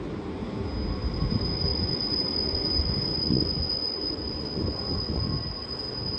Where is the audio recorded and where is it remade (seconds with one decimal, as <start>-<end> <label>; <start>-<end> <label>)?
0.0-1.7 recorded; 1.7-5.2 remade; 5.2-6.2 recorded